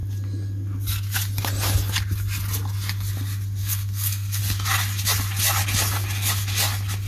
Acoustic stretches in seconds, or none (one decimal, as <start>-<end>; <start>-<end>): 0.0-3.6; 4.4-7.1